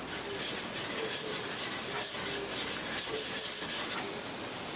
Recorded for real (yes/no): yes